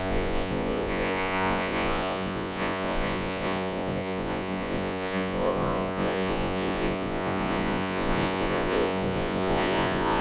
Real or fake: fake